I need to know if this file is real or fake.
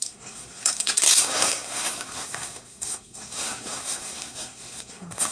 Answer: fake